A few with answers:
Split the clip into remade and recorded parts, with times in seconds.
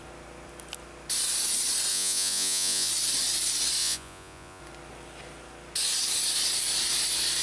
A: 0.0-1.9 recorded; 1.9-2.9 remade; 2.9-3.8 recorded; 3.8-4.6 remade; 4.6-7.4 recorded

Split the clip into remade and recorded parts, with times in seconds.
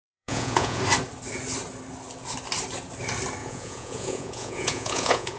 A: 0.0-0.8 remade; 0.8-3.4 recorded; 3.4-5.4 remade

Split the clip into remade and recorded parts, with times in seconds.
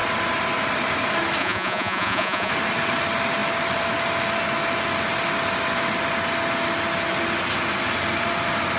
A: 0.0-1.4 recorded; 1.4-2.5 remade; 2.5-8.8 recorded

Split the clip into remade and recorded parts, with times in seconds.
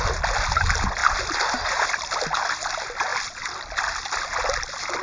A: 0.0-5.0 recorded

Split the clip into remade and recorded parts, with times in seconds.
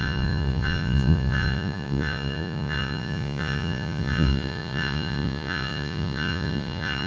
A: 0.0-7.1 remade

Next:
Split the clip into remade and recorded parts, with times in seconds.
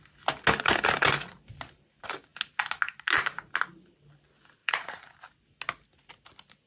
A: 0.0-4.6 recorded; 4.6-5.2 remade; 5.2-6.7 recorded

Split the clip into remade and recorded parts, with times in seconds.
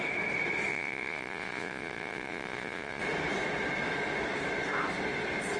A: 0.0-0.7 recorded; 0.7-3.0 remade; 3.0-5.6 recorded